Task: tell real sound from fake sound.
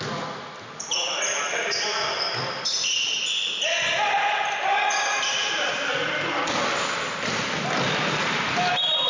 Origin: real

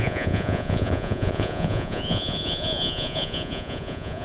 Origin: fake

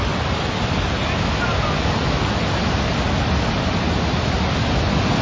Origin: real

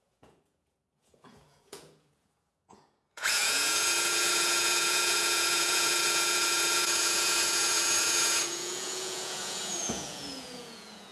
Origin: fake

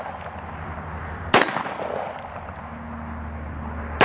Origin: real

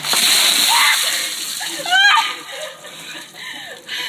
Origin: real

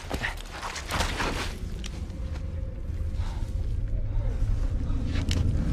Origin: real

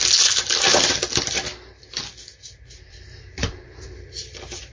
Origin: real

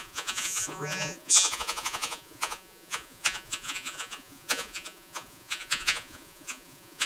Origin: fake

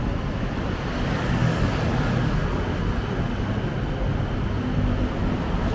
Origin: real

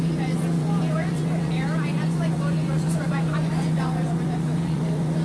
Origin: fake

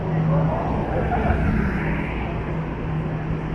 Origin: real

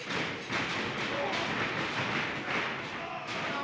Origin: real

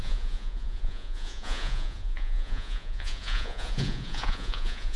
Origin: fake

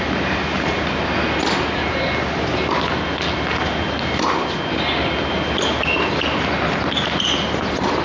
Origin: real